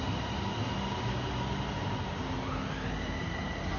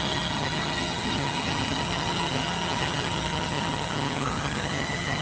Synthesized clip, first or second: second